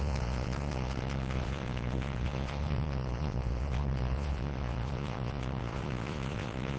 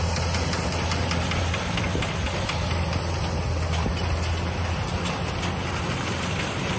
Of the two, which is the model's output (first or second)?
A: first